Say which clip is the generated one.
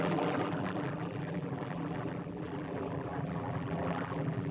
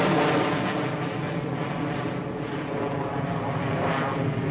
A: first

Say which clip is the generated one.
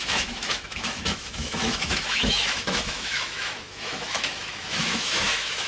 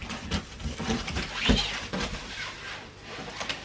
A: first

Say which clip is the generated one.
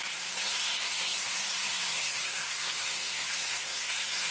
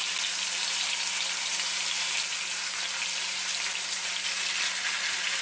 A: first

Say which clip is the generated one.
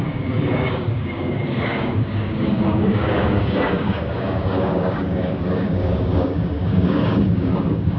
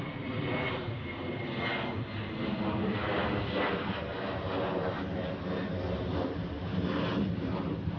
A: first